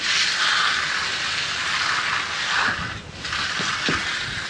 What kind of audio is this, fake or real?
real